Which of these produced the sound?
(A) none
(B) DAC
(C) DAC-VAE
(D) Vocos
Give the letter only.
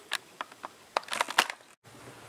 A